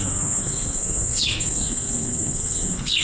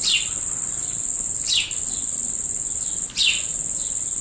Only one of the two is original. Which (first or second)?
second